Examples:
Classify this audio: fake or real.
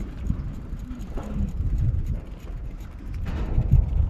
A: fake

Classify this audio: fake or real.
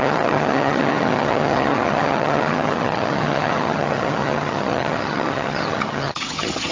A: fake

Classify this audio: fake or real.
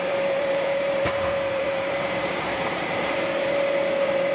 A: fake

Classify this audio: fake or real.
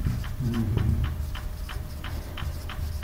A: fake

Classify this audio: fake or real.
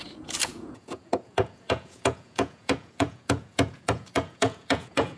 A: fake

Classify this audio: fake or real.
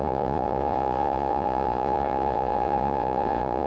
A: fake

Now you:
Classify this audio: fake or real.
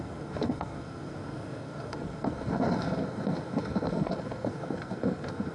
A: fake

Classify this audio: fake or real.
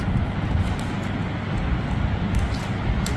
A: real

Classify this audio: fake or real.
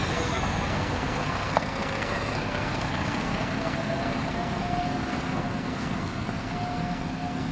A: fake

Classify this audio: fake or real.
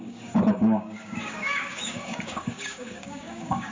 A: fake